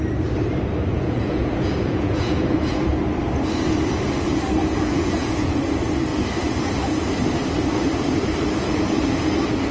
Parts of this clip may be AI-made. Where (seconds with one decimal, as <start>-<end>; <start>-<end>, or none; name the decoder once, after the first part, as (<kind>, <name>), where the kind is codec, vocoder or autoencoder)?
0.9-2.8 (vocoder, Vocos); 4.6-5.6